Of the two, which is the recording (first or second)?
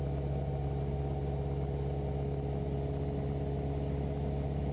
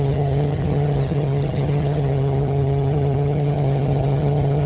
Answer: first